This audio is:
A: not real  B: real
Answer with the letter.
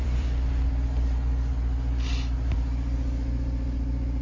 A